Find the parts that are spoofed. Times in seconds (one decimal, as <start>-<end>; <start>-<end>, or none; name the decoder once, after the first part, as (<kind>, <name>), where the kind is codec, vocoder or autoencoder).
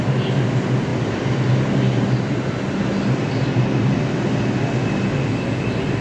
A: none